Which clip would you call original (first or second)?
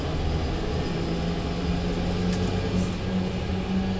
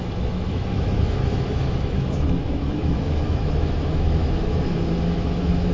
first